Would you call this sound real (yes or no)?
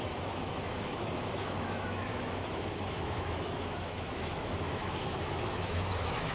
no